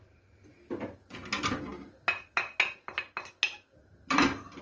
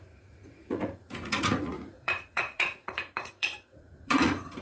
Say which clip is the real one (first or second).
first